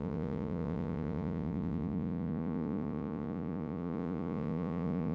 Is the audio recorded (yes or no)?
no